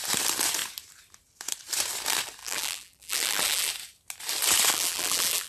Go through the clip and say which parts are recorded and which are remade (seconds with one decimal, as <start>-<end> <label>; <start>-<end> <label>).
0.0-2.4 recorded; 2.4-3.7 remade; 3.7-4.7 recorded; 4.7-5.5 remade